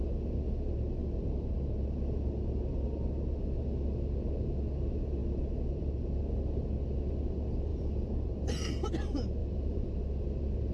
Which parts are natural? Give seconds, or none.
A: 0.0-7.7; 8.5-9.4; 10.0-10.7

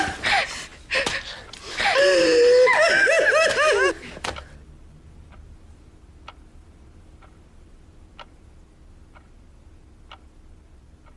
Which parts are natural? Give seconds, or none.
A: 0.0-11.2

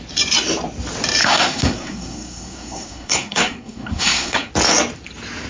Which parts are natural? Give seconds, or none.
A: 0.0-1.2; 4.5-5.5

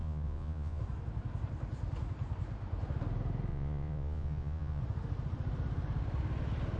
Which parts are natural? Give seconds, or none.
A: 0.8-3.5; 4.8-6.8

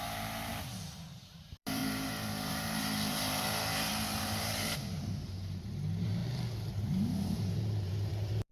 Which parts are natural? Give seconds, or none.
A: 1.8-2.5; 6.2-6.7

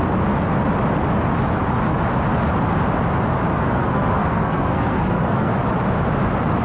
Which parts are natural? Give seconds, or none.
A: 0.0-3.5; 5.5-6.6